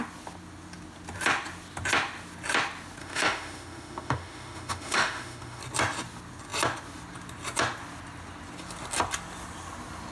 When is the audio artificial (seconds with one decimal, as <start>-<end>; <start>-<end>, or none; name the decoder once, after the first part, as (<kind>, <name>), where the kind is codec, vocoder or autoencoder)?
3.0-5.6 (autoencoder, DAC-VAE)